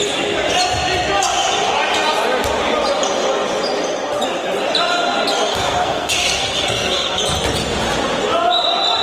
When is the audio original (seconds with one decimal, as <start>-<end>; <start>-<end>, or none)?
0.0-5.5; 7.2-9.0